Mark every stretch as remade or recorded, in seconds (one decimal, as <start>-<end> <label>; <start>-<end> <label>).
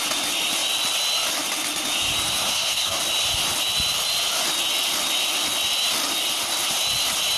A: 0.0-2.4 recorded; 2.4-3.0 remade; 3.0-7.4 recorded